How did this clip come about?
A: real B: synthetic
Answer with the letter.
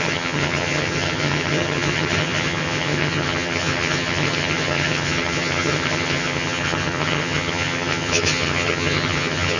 B